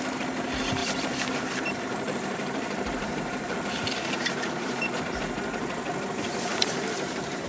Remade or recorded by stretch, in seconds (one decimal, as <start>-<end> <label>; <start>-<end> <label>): 0.0-0.8 recorded; 0.8-5.0 remade; 5.0-6.5 recorded; 6.5-7.5 remade